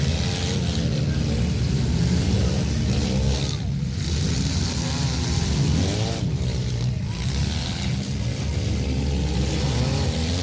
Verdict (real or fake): real